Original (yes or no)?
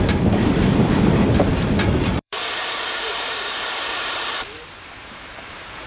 no